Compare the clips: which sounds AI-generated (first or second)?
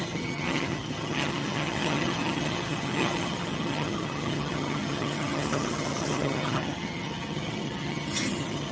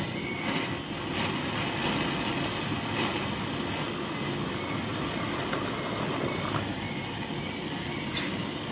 first